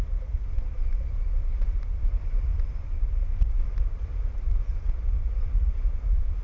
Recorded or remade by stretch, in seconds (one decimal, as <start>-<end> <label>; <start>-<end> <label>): 0.0-2.5 recorded; 2.5-6.4 remade